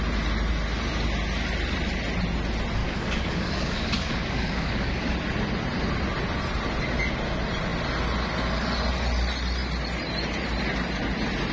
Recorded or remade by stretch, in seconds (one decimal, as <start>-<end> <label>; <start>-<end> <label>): 0.0-2.8 recorded; 2.8-5.1 remade; 5.1-11.5 recorded